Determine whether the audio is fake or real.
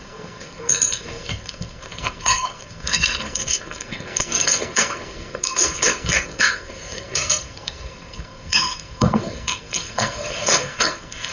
fake